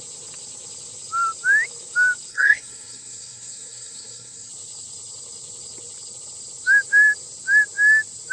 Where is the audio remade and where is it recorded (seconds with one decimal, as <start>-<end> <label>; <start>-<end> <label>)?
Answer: 0.0-2.3 recorded; 2.3-4.5 remade; 4.5-8.3 recorded